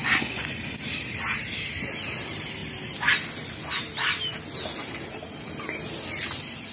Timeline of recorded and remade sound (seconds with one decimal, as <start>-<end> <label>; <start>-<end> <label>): 0.0-0.6 remade; 0.6-6.7 recorded